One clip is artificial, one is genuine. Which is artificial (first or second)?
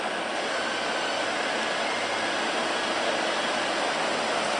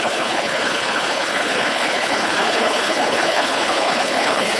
second